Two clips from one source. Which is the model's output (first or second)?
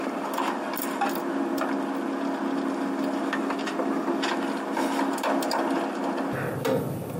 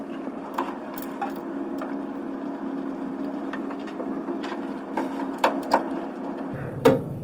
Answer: second